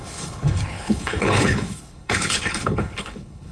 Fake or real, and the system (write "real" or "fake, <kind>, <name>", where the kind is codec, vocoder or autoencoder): fake, codec, HILCodec